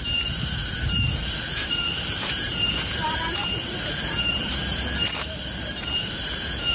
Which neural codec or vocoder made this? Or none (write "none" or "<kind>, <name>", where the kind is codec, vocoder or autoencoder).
vocoder, BigVGAN v2